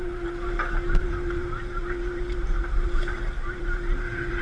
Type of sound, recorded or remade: remade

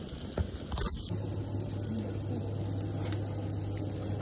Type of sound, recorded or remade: recorded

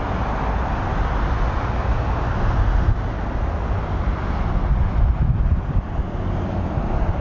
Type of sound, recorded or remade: recorded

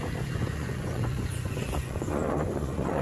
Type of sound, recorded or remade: remade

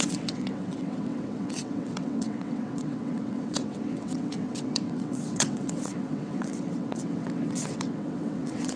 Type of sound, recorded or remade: remade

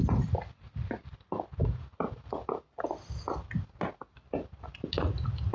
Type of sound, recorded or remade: recorded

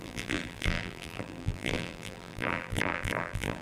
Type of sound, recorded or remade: remade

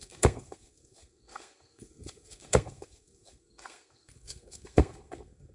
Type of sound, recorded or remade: remade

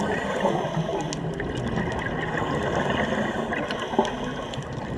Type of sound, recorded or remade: recorded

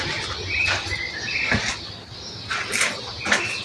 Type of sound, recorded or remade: recorded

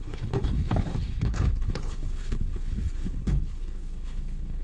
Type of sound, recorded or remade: remade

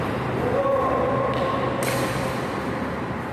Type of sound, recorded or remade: recorded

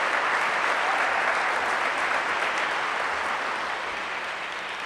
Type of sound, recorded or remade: remade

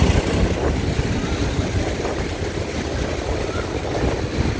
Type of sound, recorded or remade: recorded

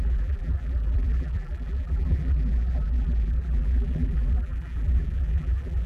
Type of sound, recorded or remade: remade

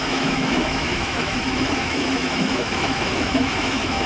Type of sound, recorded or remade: remade